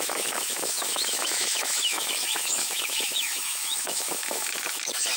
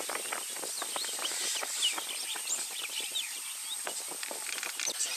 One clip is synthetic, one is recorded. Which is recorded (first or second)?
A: second